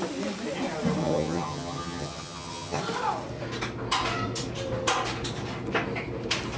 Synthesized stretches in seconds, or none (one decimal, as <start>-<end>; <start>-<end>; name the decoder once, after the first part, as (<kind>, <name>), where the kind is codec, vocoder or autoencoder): 1.0-2.8 (vocoder, HiFi-GAN)